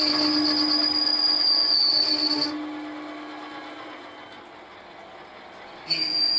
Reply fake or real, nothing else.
real